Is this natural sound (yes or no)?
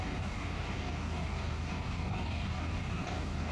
no